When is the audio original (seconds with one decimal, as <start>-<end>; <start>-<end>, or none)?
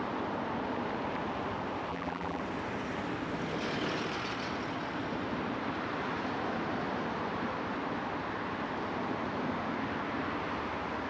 0.0-1.9; 2.4-11.1